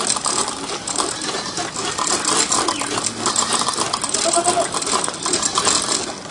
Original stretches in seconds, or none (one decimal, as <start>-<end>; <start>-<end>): 0.0-0.4; 3.3-6.3